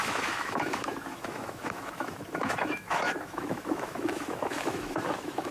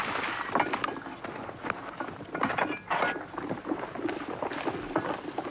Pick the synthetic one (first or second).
first